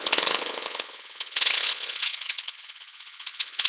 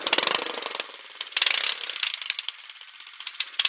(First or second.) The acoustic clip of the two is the second